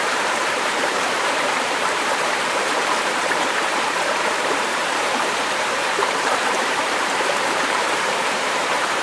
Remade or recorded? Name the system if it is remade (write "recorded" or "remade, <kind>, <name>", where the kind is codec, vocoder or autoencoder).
remade, vocoder, BigVGAN v2